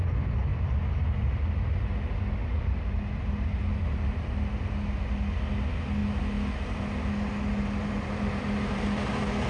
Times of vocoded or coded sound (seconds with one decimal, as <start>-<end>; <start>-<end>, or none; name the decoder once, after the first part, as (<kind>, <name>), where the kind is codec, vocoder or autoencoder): none